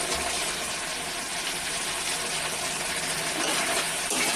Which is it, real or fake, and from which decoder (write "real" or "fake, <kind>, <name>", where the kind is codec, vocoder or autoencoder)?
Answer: real